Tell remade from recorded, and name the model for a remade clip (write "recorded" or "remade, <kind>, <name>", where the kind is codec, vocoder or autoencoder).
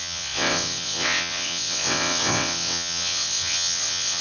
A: remade, vocoder, WaveNeXt